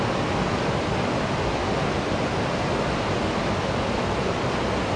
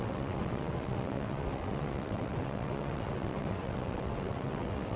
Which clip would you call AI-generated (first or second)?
second